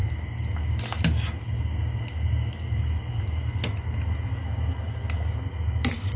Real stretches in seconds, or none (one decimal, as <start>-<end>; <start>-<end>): 0.0-6.2